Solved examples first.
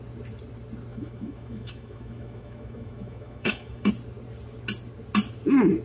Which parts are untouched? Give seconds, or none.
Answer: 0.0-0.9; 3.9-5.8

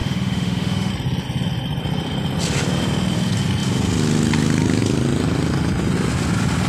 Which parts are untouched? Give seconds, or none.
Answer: 0.9-6.7

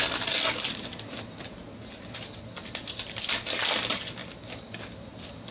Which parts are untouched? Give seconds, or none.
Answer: 0.0-5.5

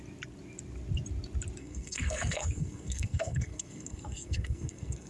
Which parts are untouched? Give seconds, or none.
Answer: 0.0-1.6